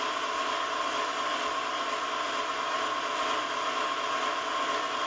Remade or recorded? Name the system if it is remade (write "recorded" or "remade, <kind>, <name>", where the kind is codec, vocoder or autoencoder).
recorded